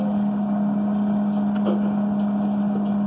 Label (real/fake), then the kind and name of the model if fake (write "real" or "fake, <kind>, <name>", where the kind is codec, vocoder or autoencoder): real